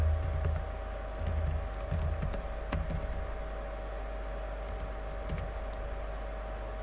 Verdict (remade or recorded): recorded